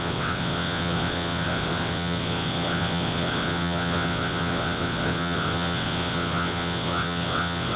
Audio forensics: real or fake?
fake